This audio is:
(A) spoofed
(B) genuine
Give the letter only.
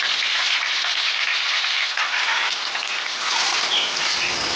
B